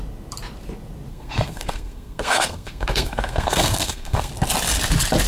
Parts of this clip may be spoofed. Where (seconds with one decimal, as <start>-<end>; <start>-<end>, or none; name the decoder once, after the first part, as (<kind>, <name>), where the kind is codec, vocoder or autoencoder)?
1.1-4.3 (codec, SNAC)